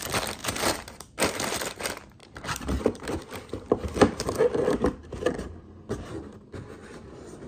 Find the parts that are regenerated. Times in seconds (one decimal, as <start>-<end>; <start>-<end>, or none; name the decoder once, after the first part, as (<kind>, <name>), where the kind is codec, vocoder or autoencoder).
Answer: 0.4-1.8 (vocoder, BigVGAN v2); 2.2-3.2